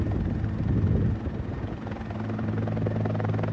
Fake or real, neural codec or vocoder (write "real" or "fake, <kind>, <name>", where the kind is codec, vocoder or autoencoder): real